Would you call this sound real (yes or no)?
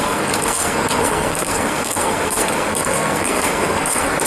no